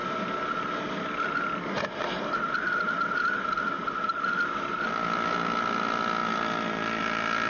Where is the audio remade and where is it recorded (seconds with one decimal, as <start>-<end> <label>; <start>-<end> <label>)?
0.0-7.5 recorded